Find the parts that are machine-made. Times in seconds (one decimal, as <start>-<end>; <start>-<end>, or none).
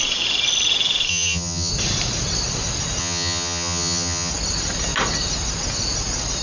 1.1-1.7; 3.0-4.3